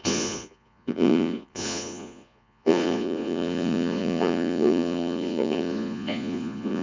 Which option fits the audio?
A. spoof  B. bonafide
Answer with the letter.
A